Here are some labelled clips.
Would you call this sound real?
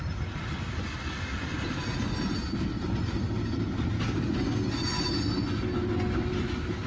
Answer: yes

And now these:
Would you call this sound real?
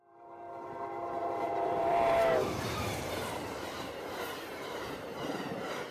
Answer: no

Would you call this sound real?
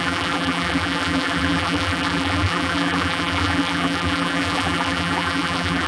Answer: no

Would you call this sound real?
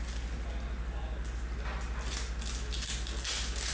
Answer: yes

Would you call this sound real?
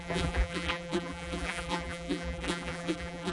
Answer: no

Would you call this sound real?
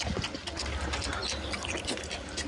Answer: yes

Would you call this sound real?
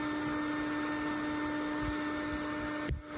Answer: yes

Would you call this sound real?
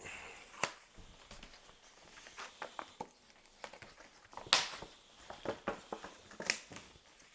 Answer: yes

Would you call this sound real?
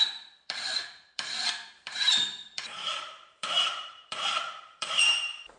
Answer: no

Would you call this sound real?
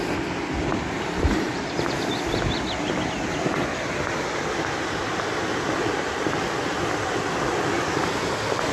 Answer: yes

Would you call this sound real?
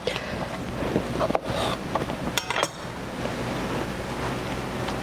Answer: yes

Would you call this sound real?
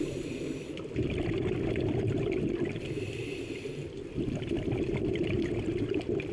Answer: no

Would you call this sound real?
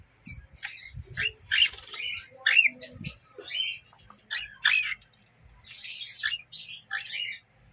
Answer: yes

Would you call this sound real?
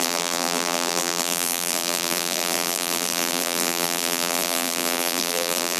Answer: no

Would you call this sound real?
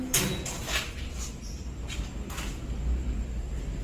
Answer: yes